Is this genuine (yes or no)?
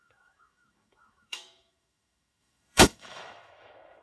no